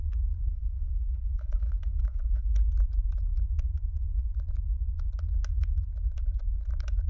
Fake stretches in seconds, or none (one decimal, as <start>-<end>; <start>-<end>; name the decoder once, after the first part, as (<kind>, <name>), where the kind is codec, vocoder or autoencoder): 0.4-2.6 (codec, HILCodec)